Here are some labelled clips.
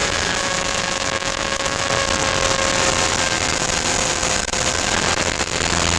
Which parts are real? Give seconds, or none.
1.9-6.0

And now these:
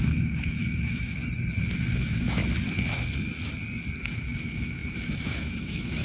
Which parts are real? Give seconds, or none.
1.2-1.9; 2.4-4.0

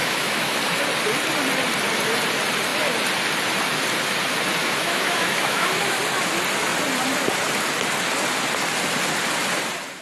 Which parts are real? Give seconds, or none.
0.6-4.6; 6.0-10.0

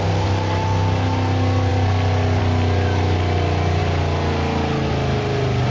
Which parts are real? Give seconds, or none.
0.0-5.7